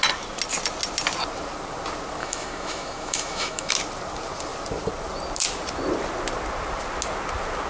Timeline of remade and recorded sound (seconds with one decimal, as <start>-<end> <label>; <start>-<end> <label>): 0.0-2.2 recorded; 2.2-3.7 remade; 3.7-7.7 recorded